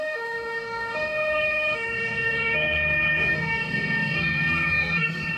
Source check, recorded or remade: remade